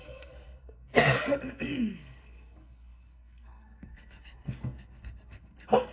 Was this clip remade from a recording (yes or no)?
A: yes